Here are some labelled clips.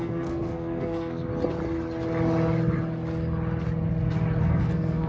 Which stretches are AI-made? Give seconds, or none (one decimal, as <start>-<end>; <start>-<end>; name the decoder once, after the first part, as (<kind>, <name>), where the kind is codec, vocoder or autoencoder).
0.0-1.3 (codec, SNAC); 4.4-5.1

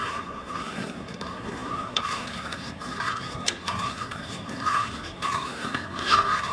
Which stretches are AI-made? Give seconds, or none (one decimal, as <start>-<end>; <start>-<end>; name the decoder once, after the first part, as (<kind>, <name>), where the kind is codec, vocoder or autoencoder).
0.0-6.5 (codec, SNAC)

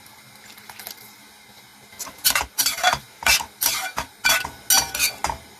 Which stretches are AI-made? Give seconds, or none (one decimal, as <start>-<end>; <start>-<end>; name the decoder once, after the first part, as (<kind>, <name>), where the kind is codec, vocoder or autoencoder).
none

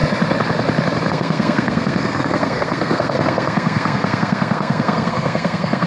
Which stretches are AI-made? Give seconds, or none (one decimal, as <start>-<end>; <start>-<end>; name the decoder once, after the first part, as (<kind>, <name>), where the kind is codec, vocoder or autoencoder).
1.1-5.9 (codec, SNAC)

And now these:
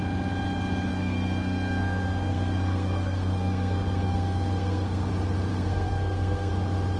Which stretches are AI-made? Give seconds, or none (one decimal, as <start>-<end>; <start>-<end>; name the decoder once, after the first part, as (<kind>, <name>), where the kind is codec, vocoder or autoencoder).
0.9-5.1 (codec, SNAC); 5.5-6.5